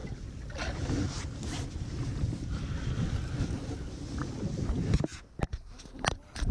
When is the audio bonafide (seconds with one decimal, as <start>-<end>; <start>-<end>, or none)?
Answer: 0.0-6.5